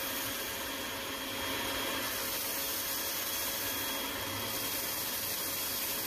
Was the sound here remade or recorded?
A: recorded